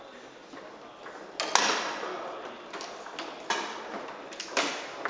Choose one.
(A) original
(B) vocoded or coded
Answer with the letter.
A